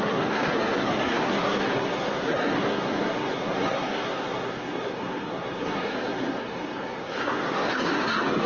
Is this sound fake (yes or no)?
yes